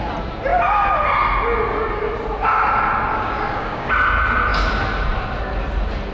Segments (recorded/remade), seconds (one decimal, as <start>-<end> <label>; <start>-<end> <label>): 0.0-3.1 recorded; 3.1-3.9 remade; 3.9-6.1 recorded

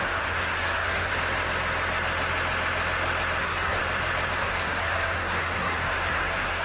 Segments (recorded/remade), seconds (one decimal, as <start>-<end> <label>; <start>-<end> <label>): 0.0-1.1 remade; 1.1-3.4 recorded; 3.4-3.8 remade; 3.8-4.4 recorded; 4.4-6.6 remade

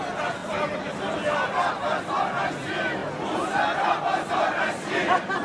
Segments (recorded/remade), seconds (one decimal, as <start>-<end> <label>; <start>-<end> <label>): 0.0-5.4 recorded

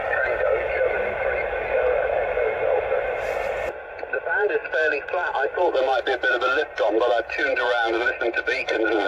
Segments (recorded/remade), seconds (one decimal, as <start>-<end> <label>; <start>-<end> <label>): 0.0-9.1 recorded